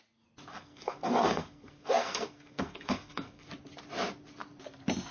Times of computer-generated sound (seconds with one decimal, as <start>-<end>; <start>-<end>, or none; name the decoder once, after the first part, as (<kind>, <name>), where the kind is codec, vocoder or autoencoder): 0.5-3.5 (codec, SNAC)